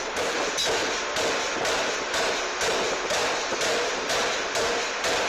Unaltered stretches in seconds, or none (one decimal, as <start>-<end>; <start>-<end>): 0.8-2.3